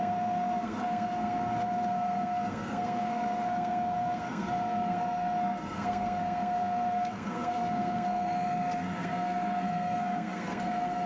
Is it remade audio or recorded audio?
remade